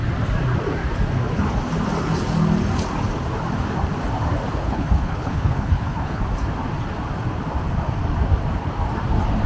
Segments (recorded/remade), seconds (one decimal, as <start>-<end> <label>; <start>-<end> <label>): 0.0-4.6 recorded; 4.6-6.2 remade; 6.2-9.5 recorded